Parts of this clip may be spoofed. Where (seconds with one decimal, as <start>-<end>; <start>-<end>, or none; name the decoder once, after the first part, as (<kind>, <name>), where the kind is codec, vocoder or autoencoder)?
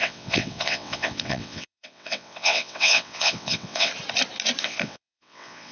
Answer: 0.0-3.9 (vocoder, WaveNeXt); 4.6-5.7